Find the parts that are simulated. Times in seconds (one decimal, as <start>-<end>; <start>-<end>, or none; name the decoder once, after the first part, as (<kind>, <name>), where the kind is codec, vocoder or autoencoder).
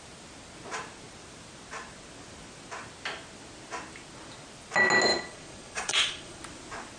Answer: 5.1-6.4 (vocoder, Vocos)